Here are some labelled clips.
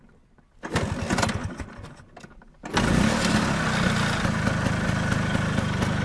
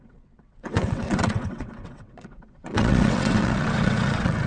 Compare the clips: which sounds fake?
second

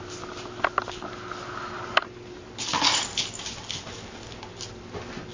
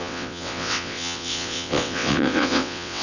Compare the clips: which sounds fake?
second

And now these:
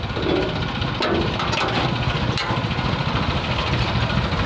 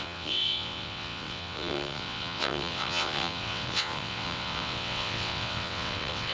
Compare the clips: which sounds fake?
second